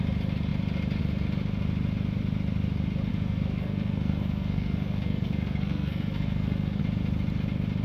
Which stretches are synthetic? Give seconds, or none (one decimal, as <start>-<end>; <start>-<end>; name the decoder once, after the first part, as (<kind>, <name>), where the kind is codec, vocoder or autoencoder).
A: 3.1-6.8 (codec, SNAC)